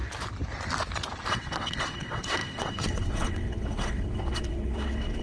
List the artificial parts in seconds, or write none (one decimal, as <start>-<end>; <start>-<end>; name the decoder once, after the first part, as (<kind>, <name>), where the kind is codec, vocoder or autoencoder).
1.3-5.2 (vocoder, WaveNeXt)